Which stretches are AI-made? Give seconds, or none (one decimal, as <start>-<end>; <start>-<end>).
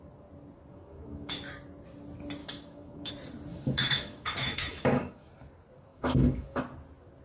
0.7-1.3; 2.4-3.1; 3.5-5.3; 5.9-6.6